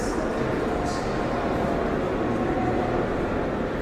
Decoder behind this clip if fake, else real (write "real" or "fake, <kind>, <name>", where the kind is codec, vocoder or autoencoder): real